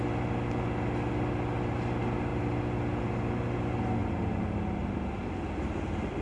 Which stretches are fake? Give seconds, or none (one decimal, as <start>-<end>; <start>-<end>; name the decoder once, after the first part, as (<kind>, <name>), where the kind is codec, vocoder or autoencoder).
none